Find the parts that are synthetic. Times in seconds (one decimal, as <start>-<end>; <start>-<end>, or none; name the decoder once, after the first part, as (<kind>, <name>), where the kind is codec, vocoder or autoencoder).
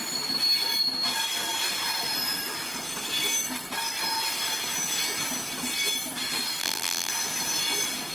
6.6-7.1 (vocoder, BigVGAN v2)